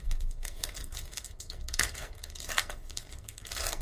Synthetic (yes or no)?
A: yes